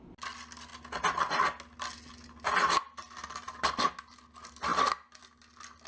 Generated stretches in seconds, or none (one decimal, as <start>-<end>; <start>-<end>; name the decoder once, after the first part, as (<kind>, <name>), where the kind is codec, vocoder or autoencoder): none